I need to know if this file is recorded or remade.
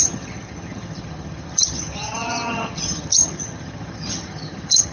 remade